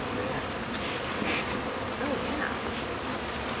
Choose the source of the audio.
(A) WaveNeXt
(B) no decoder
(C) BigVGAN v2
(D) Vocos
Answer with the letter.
C